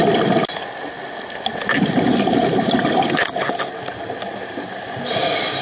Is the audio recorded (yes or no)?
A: yes